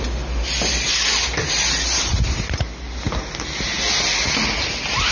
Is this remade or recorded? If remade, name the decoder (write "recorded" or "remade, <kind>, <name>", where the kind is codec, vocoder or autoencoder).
recorded